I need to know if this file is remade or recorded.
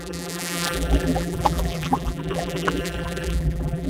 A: remade